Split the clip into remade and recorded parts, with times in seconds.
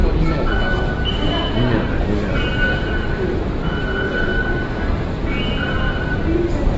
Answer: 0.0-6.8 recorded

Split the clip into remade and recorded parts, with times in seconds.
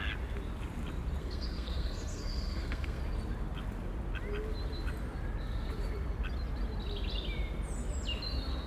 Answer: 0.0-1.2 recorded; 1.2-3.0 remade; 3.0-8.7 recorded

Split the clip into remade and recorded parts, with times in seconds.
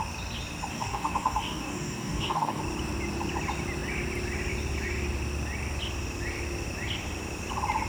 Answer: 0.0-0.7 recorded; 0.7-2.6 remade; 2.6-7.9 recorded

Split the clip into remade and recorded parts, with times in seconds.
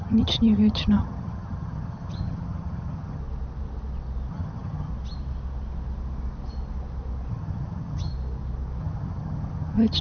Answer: 0.0-3.2 remade; 3.2-4.3 recorded; 4.3-4.9 remade; 4.9-7.3 recorded; 7.3-8.1 remade; 8.1-8.8 recorded; 8.8-10.0 remade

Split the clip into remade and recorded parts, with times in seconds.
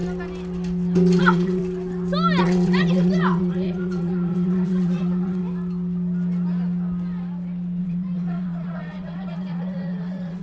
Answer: 0.0-1.2 recorded; 1.2-1.6 remade; 1.6-2.4 recorded; 2.4-5.4 remade; 5.4-7.8 recorded; 7.8-10.4 remade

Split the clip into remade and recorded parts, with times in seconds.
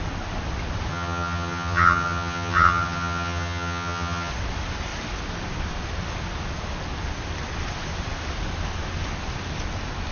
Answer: 0.0-0.9 recorded; 0.9-4.3 remade; 4.3-10.1 recorded